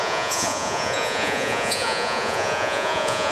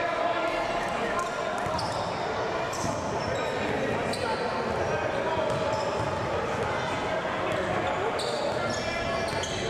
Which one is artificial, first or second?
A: first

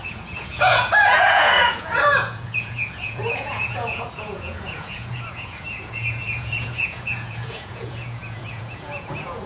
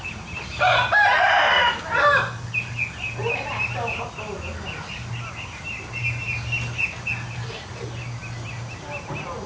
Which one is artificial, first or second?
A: first